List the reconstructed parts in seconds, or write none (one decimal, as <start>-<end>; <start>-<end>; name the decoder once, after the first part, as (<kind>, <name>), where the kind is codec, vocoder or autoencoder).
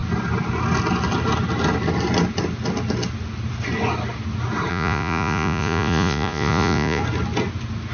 4.7-7.0 (vocoder, Vocos)